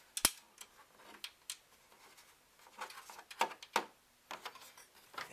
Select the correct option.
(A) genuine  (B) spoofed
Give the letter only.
A